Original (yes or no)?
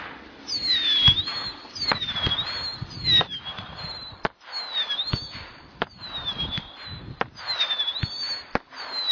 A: yes